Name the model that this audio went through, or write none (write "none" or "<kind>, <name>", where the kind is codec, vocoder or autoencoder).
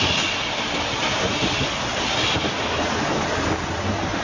none